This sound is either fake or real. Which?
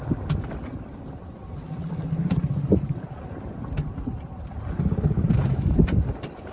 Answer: real